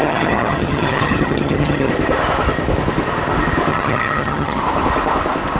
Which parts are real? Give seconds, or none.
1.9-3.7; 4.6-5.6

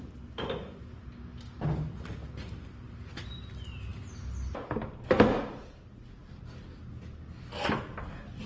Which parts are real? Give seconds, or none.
0.0-2.2; 3.1-8.5

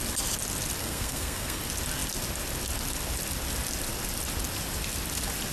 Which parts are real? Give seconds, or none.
0.0-0.8; 1.6-5.5

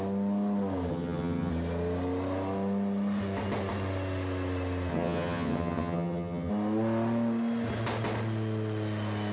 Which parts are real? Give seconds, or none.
0.0-0.9; 1.5-4.9; 6.5-9.3

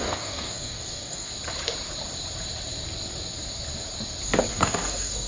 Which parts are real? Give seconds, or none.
1.3-4.5

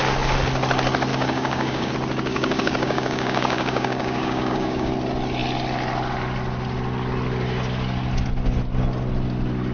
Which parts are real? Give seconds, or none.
0.0-1.1; 1.9-2.3; 4.9-9.7